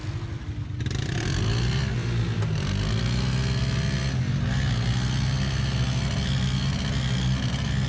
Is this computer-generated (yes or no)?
no